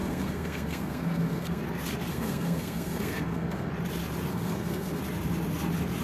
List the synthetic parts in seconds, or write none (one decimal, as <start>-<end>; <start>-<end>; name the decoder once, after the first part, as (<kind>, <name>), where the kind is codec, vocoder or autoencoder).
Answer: 0.0-1.6 (codec, SNAC); 2.1-3.7; 4.3-5.0